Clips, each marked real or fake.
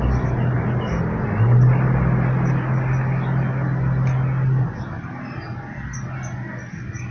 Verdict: real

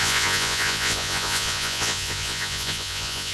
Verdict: fake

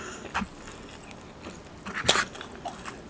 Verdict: real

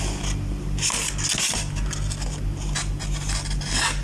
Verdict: real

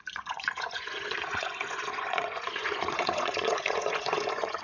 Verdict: fake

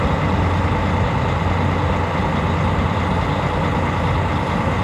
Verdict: real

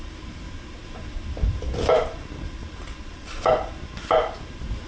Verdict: real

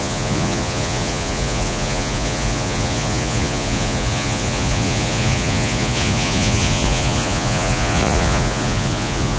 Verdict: fake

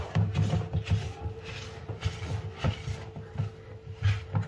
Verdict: real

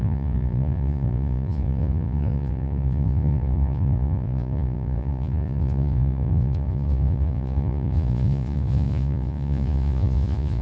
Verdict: fake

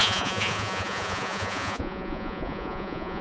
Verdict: fake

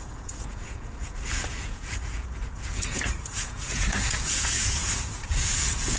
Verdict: fake